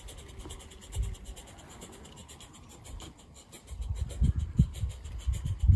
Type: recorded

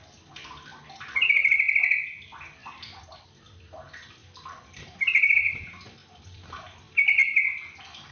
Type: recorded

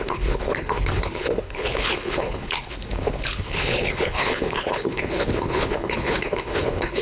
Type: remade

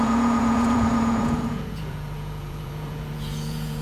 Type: remade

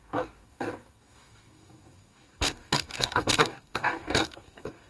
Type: remade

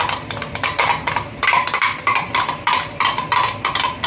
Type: recorded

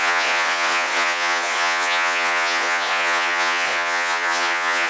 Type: remade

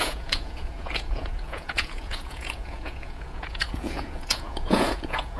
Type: remade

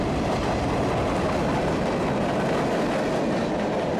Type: recorded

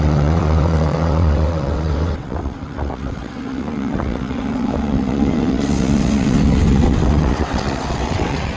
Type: remade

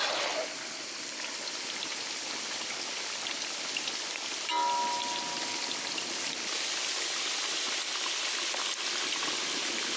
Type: recorded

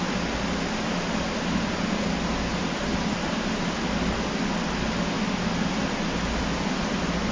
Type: recorded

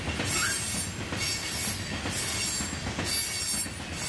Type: recorded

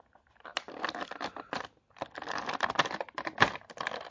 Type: recorded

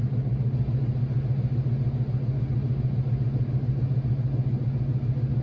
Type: recorded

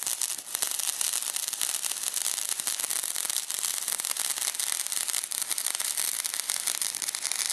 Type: remade